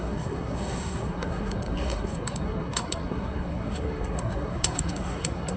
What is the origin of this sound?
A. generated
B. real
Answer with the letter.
A